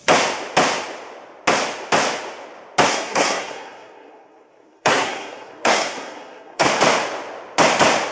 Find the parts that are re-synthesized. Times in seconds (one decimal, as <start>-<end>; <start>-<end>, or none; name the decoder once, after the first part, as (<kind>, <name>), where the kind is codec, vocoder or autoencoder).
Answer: 2.9-6.7 (codec, SNAC)